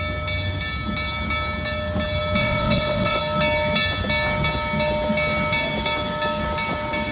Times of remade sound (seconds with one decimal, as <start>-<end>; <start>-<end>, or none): 2.4-3.2